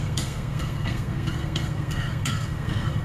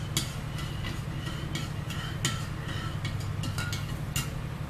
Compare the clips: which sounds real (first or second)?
second